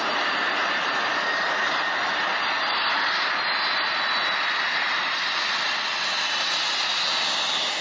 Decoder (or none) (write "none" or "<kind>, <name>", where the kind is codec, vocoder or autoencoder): none